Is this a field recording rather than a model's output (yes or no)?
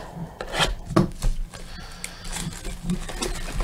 yes